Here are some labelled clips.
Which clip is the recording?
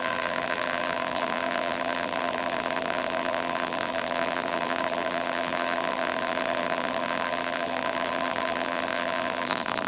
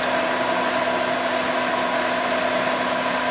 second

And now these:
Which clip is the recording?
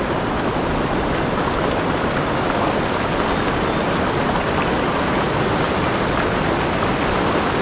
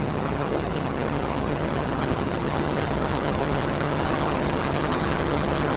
first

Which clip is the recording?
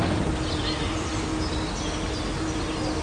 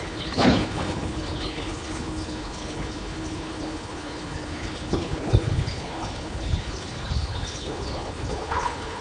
first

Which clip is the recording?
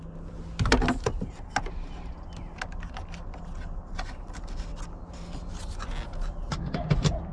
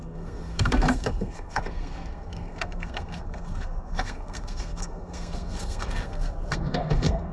first